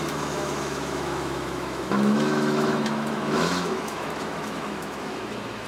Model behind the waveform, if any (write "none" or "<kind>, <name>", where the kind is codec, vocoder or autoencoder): autoencoder, DAC-VAE